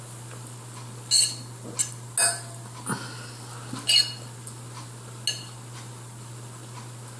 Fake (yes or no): no